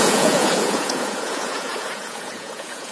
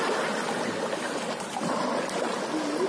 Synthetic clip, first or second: first